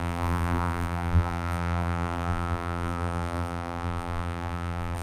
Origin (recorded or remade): remade